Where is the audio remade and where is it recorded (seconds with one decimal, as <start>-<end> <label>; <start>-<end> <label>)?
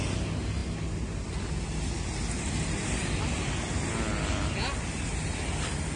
0.0-6.0 recorded